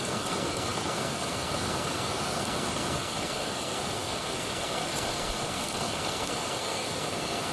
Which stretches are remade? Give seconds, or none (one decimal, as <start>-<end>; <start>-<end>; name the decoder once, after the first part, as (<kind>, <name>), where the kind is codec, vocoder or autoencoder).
0.0-7.5 (codec, SNAC)